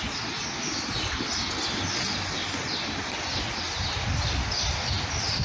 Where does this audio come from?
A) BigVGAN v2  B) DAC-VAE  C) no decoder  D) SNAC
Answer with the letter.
C